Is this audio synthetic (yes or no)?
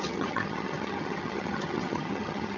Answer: yes